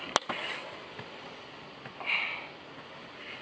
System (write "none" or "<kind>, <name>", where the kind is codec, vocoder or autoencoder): none